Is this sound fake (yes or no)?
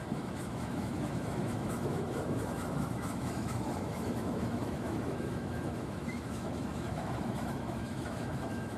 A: yes